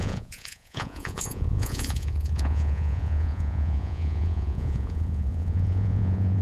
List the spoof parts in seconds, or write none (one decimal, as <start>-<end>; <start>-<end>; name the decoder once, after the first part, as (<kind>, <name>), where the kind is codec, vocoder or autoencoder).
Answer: 0.0-6.4 (vocoder, Vocos)